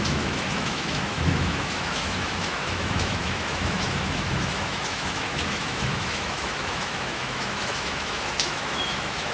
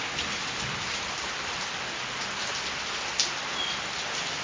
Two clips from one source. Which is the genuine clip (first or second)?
second